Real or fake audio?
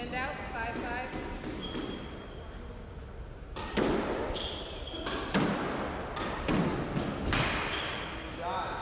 real